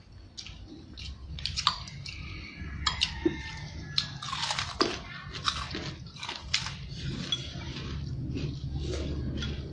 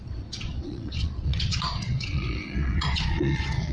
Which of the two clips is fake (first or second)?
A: second